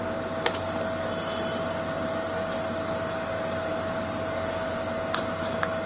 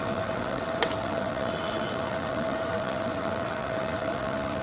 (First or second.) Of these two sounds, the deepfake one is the second